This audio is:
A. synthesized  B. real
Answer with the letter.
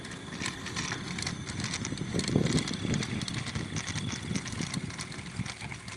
B